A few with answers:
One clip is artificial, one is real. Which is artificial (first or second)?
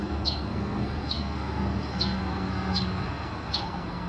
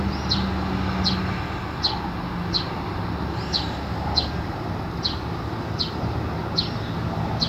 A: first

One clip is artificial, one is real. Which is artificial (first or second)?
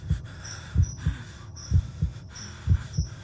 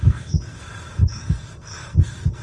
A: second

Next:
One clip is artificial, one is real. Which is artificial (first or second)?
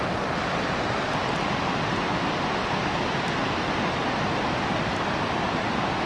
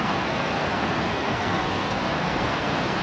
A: second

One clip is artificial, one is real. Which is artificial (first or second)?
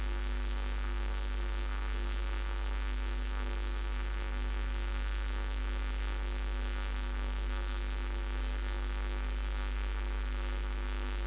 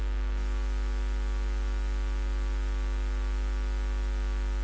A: first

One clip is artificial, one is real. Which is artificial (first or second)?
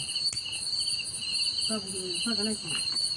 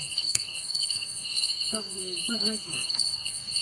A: second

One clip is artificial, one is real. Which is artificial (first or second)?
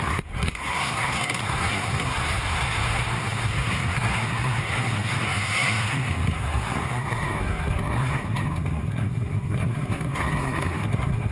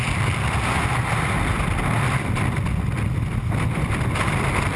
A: first